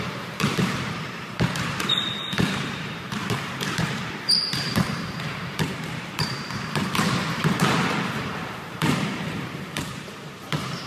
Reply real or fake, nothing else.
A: fake